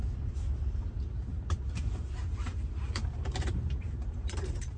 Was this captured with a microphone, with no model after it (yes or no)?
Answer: no